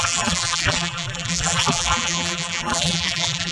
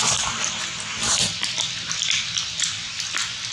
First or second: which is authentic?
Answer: second